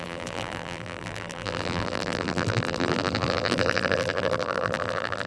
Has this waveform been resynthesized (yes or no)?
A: yes